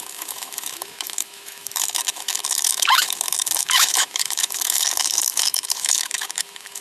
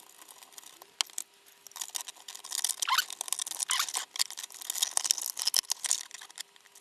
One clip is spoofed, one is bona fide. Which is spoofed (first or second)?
first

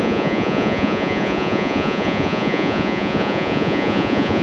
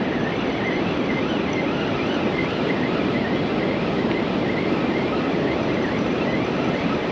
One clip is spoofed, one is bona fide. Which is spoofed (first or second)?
first